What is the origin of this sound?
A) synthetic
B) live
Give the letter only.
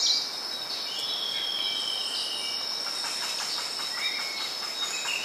B